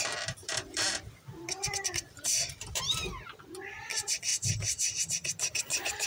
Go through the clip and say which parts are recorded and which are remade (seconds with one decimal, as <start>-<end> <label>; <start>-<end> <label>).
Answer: 0.0-0.4 recorded; 0.4-2.8 remade; 2.8-4.3 recorded; 4.3-6.1 remade